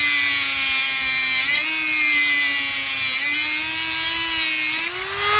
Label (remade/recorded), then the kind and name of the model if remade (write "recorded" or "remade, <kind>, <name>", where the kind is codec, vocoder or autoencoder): recorded